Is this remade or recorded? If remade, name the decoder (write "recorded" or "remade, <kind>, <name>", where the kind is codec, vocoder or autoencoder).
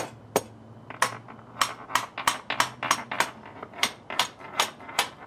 recorded